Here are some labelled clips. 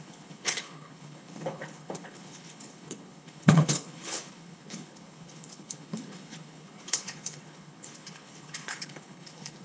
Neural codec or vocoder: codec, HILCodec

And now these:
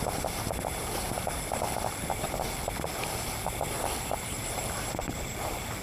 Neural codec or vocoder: vocoder, BigVGAN v2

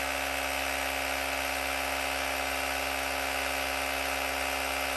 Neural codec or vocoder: none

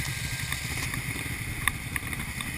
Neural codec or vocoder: none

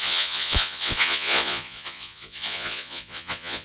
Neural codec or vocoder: vocoder, Vocos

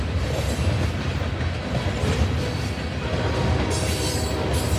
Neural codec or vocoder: none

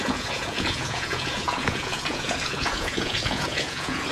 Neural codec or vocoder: vocoder, Vocos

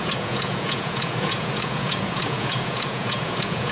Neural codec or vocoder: vocoder, Vocos